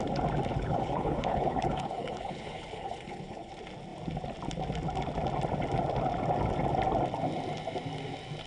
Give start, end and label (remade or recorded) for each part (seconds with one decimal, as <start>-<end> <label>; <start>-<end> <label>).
0.0-0.5 recorded; 0.5-3.5 remade; 3.5-8.5 recorded